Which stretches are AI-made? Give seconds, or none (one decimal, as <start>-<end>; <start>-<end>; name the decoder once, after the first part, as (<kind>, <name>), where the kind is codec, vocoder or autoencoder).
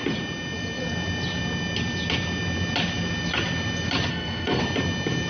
4.1-4.6 (codec, SNAC)